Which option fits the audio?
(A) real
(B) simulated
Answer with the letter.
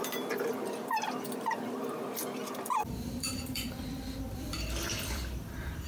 B